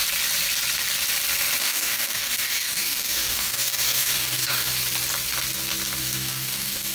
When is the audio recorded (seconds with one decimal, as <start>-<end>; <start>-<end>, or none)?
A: 0.0-1.6; 4.7-6.0